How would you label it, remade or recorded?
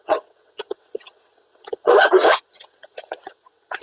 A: remade